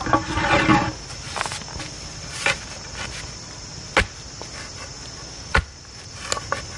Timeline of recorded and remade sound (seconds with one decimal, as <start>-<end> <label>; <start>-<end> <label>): 0.0-6.8 recorded